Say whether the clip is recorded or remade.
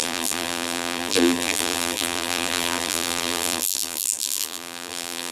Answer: remade